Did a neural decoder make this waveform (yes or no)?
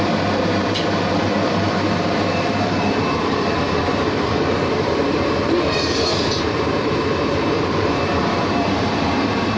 yes